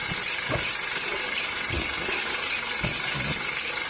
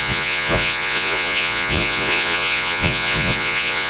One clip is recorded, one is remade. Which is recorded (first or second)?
first